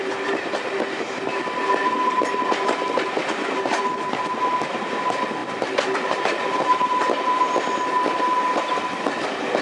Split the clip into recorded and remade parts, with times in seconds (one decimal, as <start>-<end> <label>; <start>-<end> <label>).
0.0-5.4 recorded; 5.4-7.2 remade; 7.2-9.6 recorded